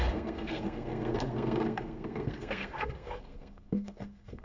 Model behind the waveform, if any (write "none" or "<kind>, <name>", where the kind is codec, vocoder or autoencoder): codec, SNAC